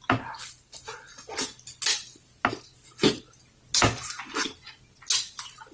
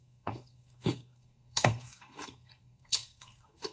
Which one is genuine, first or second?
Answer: first